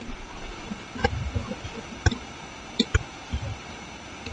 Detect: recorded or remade recorded